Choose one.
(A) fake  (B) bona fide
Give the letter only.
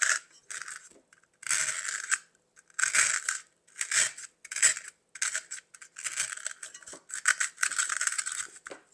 B